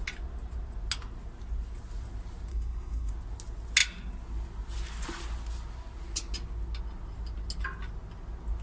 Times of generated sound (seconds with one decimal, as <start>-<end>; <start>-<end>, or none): 2.5-3.1